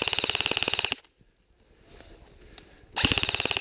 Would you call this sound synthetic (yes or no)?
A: no